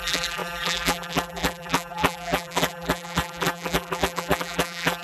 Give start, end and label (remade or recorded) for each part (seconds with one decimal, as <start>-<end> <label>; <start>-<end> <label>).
0.0-5.0 remade